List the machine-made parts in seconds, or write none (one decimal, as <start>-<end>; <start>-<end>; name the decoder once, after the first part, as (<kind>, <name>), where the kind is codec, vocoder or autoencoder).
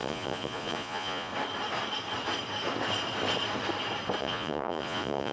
0.0-1.3 (vocoder, Vocos); 4.2-5.3